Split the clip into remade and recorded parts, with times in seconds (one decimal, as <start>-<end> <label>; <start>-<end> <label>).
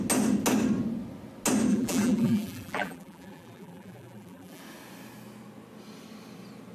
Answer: 0.0-1.7 recorded; 1.7-4.6 remade; 4.6-6.7 recorded